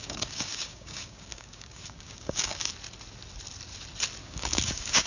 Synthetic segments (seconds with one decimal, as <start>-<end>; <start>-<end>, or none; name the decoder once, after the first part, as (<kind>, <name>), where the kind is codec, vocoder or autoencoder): 0.0-2.7 (codec, DAC); 4.2-5.1